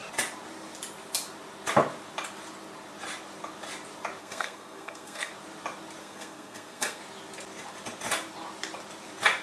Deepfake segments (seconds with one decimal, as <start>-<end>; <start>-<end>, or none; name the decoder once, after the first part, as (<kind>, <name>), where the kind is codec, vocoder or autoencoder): 4.2-5.3 (codec, SNAC); 6.0-7.0

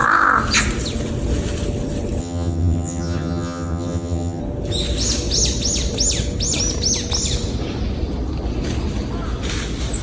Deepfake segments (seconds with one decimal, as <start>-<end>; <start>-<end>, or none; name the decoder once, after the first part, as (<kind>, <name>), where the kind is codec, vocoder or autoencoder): 2.2-4.4 (vocoder, HiFi-GAN)

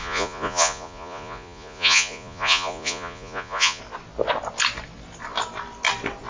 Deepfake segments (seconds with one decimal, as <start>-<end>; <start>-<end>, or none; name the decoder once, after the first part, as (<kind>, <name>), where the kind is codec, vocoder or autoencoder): 0.0-3.8 (vocoder, Vocos)

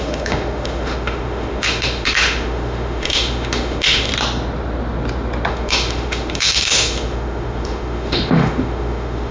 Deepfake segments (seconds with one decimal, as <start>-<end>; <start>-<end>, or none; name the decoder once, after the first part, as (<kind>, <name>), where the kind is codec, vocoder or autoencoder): 0.0-4.1 (autoencoder, DAC-VAE); 5.5-9.3

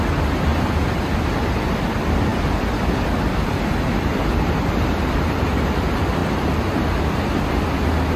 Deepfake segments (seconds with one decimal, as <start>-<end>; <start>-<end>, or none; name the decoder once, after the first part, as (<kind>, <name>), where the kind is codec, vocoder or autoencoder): 0.0-8.2 (vocoder, BigVGAN v2)

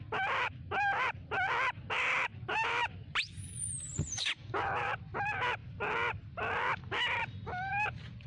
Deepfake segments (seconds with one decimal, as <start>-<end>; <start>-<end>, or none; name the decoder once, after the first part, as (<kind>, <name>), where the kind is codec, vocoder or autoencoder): 2.3-5.0 (vocoder, BigVGAN v2)

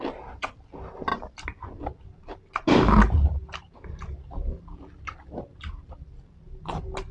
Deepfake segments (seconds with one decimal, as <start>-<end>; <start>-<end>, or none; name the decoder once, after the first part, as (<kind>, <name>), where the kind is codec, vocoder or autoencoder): none

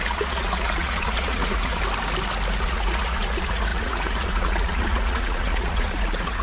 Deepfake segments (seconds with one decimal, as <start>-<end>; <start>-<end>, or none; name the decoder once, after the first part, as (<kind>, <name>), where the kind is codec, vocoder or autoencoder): 0.0-1.8 (vocoder, Vocos); 2.6-6.4